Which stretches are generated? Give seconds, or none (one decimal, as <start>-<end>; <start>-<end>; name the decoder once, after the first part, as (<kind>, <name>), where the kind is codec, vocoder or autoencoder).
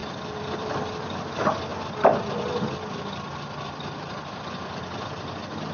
0.0-1.0 (vocoder, BigVGAN v2)